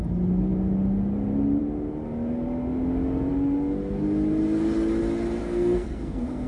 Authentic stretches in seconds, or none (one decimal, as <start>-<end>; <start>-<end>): 0.0-5.4